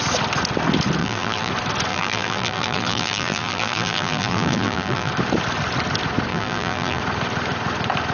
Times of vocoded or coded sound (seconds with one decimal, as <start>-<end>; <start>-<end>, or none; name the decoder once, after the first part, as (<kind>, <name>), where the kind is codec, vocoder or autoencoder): 1.0-1.5 (vocoder, BigVGAN v2); 1.9-5.1; 6.3-7.0